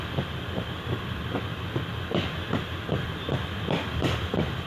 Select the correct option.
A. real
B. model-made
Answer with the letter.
A